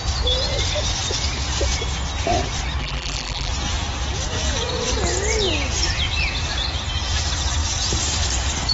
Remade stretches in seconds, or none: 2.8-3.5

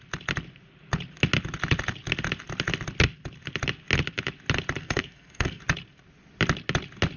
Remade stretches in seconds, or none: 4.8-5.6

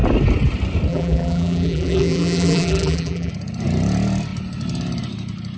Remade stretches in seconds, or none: 0.9-3.3

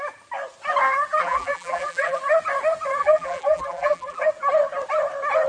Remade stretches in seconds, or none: 1.2-2.2; 3.0-4.3